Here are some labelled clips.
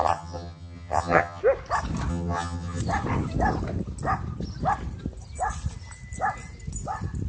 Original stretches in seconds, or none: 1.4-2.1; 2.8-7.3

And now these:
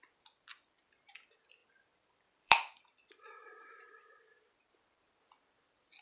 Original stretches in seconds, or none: 0.0-1.6; 2.8-6.0

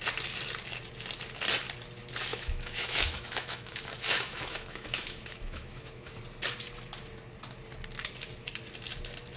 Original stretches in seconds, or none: 0.0-2.3; 6.1-9.4

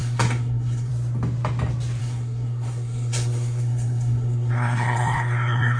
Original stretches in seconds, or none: 0.9-2.0

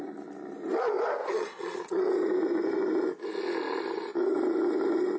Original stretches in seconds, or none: 0.0-1.2; 2.1-5.2